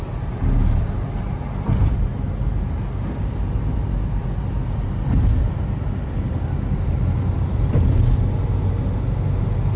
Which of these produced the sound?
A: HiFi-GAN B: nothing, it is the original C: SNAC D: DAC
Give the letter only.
B